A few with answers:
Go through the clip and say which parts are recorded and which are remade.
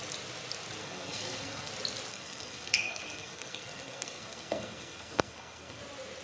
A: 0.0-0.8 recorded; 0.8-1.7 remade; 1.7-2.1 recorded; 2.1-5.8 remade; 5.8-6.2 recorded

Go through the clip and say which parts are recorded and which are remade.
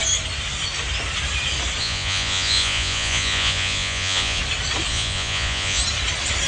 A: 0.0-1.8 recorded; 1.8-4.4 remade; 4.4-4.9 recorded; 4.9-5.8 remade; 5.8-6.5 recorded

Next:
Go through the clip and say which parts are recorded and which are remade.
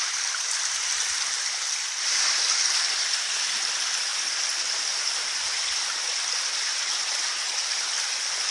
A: 0.0-8.5 recorded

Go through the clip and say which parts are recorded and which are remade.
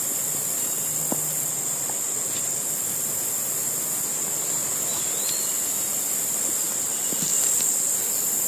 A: 0.0-8.5 recorded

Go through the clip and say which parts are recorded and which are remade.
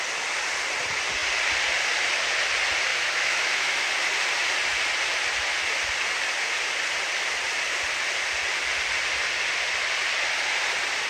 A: 0.0-2.9 recorded; 2.9-3.9 remade; 3.9-11.1 recorded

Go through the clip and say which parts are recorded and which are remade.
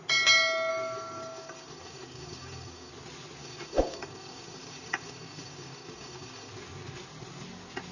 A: 0.0-0.7 recorded; 0.7-2.9 remade; 2.9-3.4 recorded; 3.4-6.5 remade; 6.5-7.9 recorded